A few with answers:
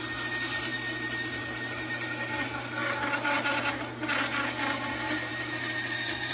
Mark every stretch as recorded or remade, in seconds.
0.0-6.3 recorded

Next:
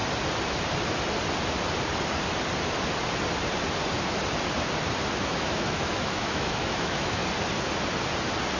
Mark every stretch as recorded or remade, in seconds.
0.0-5.2 recorded; 5.2-7.2 remade; 7.2-8.6 recorded

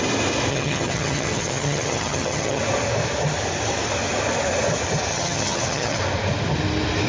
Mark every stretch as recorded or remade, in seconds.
0.0-0.5 recorded; 0.5-2.6 remade; 2.6-5.1 recorded; 5.1-6.0 remade; 6.0-7.1 recorded

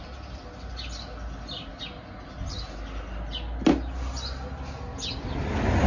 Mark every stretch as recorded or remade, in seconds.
0.0-5.9 recorded

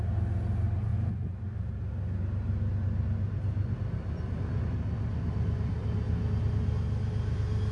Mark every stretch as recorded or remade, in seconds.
0.0-7.7 recorded

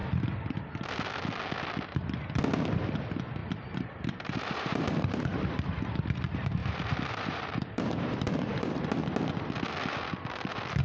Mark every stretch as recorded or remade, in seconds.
0.0-3.4 recorded; 3.4-5.7 remade; 5.7-6.6 recorded; 6.6-8.9 remade; 8.9-10.8 recorded

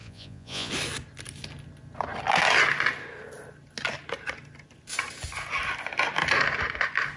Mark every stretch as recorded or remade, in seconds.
0.0-0.7 remade; 0.7-7.2 recorded

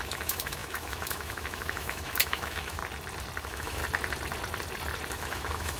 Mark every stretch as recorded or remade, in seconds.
0.0-2.8 remade; 2.8-3.4 recorded; 3.4-3.8 remade; 3.8-5.1 recorded; 5.1-5.8 remade